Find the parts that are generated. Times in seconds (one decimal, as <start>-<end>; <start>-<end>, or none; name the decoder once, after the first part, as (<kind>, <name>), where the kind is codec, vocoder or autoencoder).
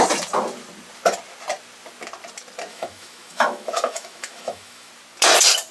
2.7-4.9 (autoencoder, DAC-VAE)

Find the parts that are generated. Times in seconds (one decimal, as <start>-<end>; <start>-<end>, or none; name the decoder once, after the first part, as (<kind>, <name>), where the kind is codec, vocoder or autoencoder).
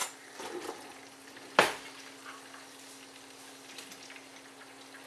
none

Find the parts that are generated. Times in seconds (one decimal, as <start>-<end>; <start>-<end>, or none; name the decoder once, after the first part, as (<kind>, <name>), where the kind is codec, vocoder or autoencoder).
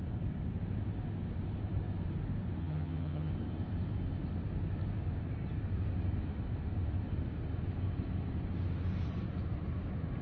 2.6-3.3 (vocoder, HiFi-GAN)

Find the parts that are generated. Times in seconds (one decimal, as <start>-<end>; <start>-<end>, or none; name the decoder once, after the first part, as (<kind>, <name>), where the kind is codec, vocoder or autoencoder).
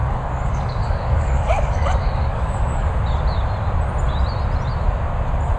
0.0-2.9 (codec, DAC)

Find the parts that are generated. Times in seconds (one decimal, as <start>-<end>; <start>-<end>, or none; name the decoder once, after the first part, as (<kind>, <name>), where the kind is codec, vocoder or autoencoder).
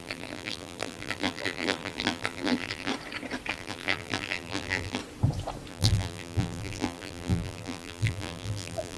0.0-2.9 (vocoder, BigVGAN v2); 3.5-5.0; 5.7-9.0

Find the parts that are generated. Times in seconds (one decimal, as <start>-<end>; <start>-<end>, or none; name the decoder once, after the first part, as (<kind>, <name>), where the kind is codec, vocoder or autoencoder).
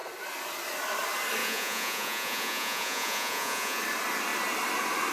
1.4-3.8 (vocoder, Vocos)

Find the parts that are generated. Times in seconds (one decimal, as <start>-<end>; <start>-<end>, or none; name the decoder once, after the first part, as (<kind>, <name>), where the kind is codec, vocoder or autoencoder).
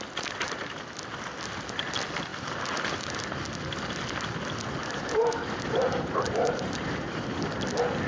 4.8-7.4 (vocoder, BigVGAN v2)